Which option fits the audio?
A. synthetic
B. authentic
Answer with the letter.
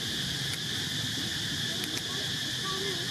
B